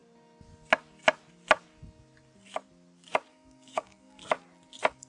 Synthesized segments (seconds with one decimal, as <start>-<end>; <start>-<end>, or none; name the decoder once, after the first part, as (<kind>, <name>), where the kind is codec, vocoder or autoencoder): 3.3-4.2 (codec, DAC)

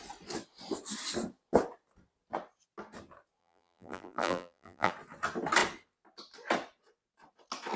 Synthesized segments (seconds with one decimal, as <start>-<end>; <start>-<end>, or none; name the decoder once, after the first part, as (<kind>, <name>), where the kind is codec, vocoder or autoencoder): 3.4-4.9 (vocoder, BigVGAN v2)

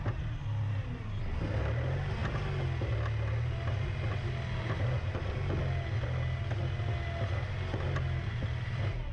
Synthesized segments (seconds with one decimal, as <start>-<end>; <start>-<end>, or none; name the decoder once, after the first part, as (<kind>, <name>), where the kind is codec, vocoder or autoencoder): none